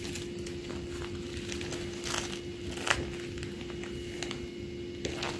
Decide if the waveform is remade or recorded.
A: recorded